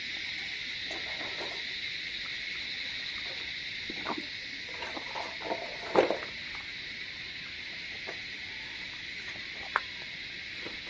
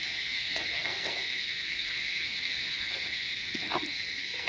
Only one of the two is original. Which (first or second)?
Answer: first